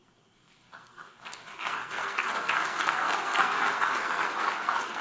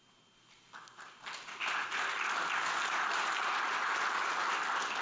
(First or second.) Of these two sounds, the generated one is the first